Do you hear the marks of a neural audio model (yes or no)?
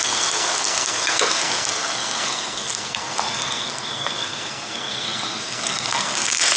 yes